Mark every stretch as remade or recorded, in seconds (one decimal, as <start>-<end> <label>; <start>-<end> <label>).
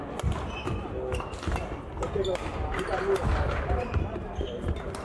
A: 0.0-2.5 recorded; 2.5-5.0 remade